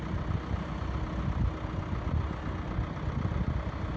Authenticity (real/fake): real